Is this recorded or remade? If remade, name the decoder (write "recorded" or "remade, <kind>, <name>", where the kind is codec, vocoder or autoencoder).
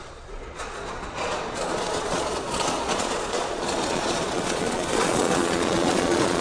remade, vocoder, Vocos